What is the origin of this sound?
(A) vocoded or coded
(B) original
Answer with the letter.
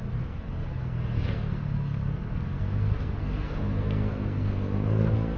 A